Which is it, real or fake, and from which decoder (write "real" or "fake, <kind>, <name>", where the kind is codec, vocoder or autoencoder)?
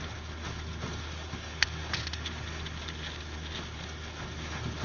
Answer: real